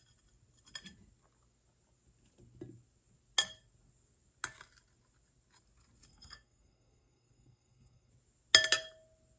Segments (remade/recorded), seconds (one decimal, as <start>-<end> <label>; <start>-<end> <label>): 0.0-6.1 recorded; 6.1-8.1 remade; 8.1-9.4 recorded